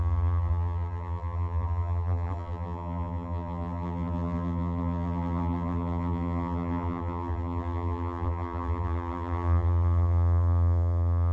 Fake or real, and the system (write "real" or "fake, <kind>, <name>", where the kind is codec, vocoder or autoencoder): fake, vocoder, BigVGAN v2